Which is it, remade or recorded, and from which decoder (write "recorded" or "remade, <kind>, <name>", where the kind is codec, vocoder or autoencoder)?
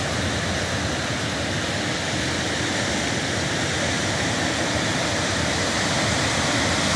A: recorded